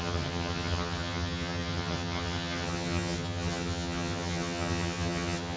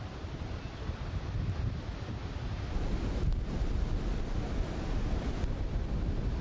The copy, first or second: first